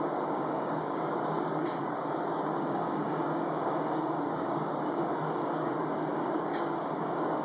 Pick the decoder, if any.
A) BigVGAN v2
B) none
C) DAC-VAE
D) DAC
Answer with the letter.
D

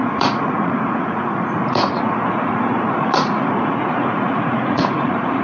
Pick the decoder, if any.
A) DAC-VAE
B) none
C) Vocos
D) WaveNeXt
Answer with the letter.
C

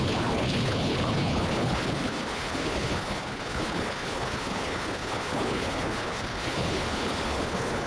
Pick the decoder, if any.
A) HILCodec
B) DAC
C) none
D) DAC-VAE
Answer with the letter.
A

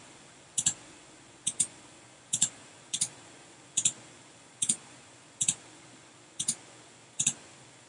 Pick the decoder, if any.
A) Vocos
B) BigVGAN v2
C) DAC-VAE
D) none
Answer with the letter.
A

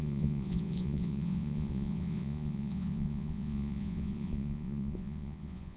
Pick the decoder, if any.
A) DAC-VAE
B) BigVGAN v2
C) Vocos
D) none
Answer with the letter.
C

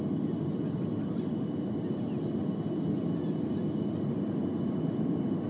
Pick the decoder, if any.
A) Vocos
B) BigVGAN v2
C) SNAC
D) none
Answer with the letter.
D